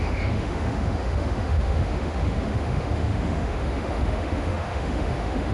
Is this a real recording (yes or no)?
no